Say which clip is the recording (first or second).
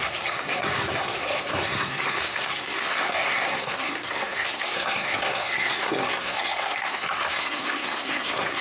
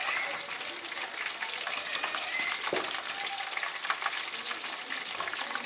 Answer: second